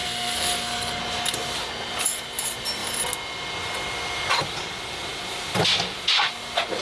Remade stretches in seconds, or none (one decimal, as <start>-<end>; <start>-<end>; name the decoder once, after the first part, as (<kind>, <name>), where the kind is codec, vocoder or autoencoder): 0.0-1.0 (codec, SNAC)